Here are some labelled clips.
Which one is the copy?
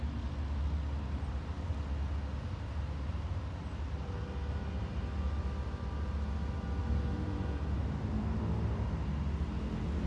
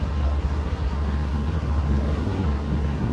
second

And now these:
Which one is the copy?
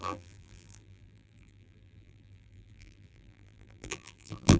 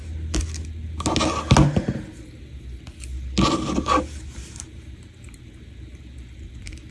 first